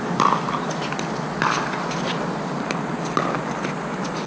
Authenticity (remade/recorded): recorded